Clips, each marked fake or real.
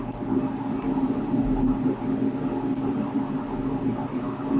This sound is real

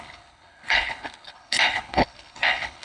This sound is fake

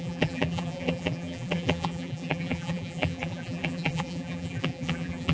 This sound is fake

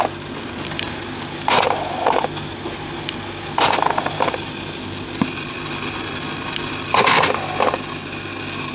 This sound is real